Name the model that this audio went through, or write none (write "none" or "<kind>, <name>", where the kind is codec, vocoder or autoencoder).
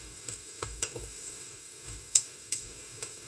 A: codec, DAC